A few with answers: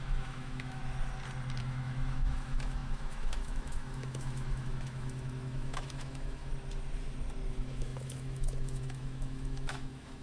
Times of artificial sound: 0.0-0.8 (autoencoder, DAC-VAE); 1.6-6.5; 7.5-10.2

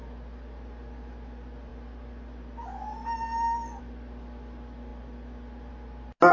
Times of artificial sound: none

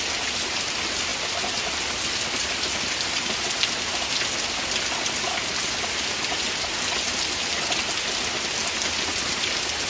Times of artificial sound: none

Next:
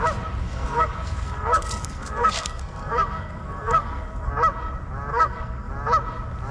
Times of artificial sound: 0.4-4.3 (codec, SNAC); 5.1-5.7